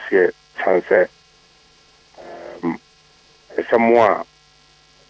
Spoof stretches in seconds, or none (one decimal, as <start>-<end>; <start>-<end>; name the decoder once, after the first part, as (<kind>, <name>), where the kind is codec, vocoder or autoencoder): 0.6-3.7 (vocoder, Vocos)